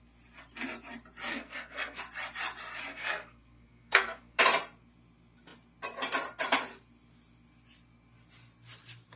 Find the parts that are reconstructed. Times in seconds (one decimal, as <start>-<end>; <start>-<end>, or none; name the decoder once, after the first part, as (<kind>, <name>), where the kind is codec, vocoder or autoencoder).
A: 1.3-2.0 (codec, SNAC); 2.9-4.4